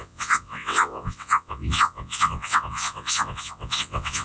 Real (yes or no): no